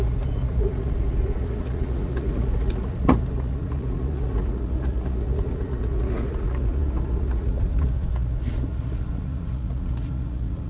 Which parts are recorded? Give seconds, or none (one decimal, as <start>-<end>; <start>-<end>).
none